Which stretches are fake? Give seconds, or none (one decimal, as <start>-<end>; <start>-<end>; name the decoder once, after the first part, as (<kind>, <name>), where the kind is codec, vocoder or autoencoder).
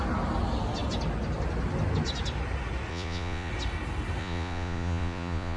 2.9-3.5 (vocoder, Vocos); 4.2-5.6